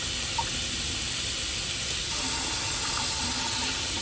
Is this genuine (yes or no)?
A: yes